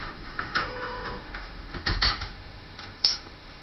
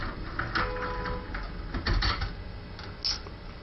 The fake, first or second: first